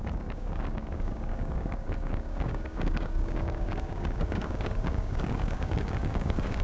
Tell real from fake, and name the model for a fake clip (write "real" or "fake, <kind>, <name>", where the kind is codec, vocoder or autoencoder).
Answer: fake, codec, DAC